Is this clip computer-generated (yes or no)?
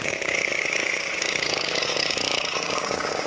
yes